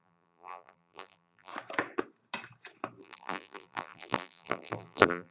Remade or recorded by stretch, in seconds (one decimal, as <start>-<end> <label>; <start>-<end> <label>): 0.0-1.5 remade; 1.5-3.0 recorded; 3.0-5.3 remade